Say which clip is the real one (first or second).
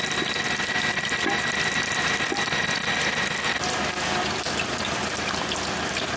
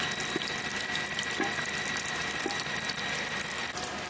second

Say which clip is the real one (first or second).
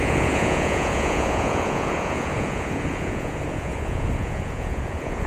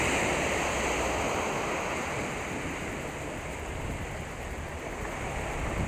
second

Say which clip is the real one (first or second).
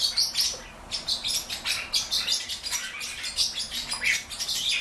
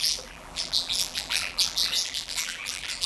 first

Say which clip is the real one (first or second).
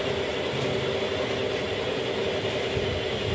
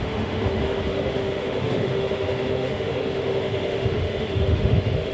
first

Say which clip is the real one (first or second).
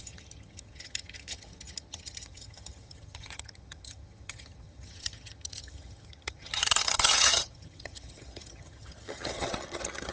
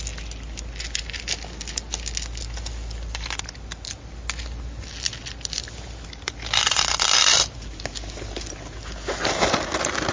second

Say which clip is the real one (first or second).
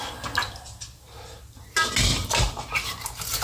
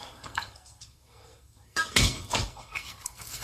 first